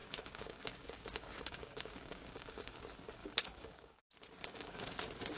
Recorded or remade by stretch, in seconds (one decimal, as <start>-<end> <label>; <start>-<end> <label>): 0.0-2.8 remade; 2.8-3.2 recorded; 3.2-4.0 remade; 4.0-4.4 recorded; 4.4-4.9 remade; 4.9-5.4 recorded